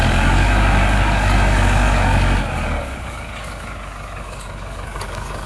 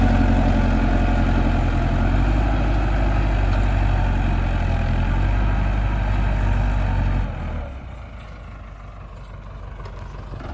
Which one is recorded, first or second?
second